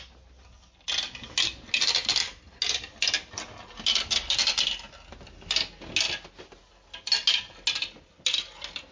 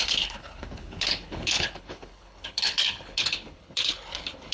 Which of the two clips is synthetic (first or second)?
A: second